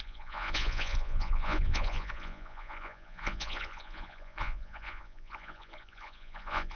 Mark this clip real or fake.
fake